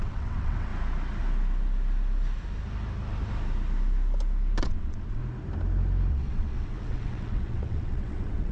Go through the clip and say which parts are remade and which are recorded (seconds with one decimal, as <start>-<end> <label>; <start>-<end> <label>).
0.0-0.7 remade; 0.7-4.6 recorded; 4.6-5.2 remade; 5.2-6.1 recorded; 6.1-8.5 remade